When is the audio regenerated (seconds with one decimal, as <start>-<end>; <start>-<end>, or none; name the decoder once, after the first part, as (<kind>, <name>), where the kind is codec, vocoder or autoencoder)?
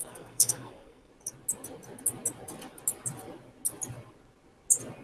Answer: 0.0-1.1 (codec, SNAC)